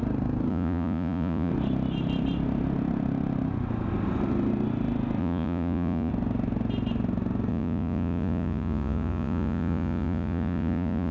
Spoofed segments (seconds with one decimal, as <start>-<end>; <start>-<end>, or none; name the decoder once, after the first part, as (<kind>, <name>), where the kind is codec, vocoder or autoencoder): 0.5-1.5 (vocoder, Vocos); 5.2-6.1; 7.5-11.1